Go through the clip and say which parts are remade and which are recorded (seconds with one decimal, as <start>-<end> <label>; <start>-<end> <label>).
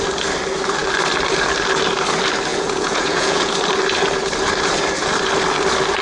0.0-2.5 recorded; 2.5-3.5 remade; 3.5-6.0 recorded